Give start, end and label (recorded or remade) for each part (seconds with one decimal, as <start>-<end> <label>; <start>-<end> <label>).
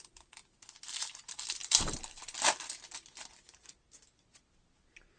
0.0-1.6 recorded; 1.6-2.2 remade; 2.2-5.2 recorded